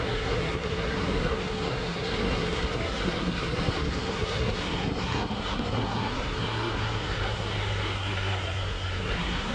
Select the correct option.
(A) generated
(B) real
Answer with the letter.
A